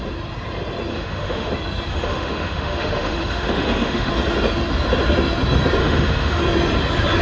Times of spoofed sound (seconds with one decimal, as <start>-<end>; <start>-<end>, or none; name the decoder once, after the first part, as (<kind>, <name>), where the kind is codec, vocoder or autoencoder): 0.9-1.5 (autoencoder, DAC-VAE); 1.9-4.1; 5.8-6.4